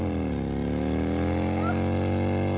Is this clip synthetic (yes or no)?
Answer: no